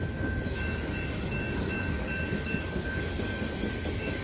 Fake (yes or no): yes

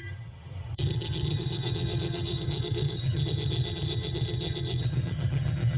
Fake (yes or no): yes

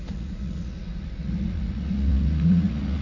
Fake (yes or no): yes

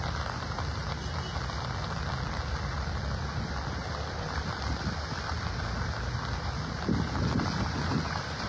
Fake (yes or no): no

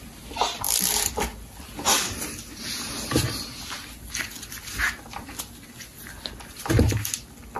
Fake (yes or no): no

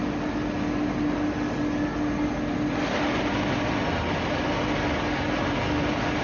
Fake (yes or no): no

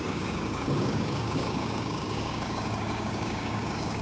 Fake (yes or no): yes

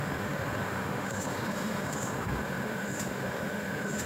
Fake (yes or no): yes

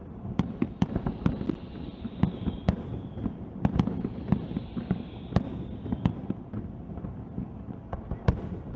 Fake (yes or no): no